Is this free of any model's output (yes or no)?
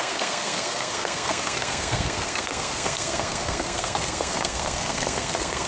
no